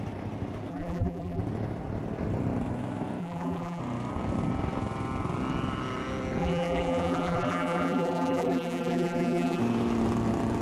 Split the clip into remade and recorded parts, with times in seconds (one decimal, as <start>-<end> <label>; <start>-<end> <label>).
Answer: 0.0-0.7 recorded; 0.7-1.4 remade; 1.4-3.2 recorded; 3.2-3.8 remade; 3.8-6.4 recorded; 6.4-9.6 remade; 9.6-10.6 recorded